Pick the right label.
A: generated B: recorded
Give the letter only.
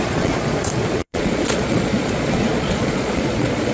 A